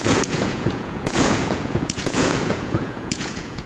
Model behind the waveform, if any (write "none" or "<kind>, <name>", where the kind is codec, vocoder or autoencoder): vocoder, Vocos